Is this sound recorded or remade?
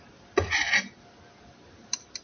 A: recorded